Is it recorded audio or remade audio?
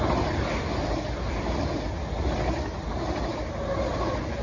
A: recorded